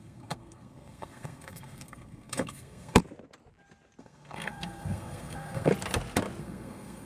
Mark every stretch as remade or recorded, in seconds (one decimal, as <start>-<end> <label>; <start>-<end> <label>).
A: 0.0-3.0 remade; 3.0-4.0 recorded; 4.0-5.7 remade; 5.7-6.4 recorded; 6.4-7.1 remade